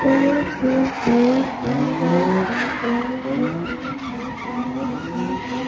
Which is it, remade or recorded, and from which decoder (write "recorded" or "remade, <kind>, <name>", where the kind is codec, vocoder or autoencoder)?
recorded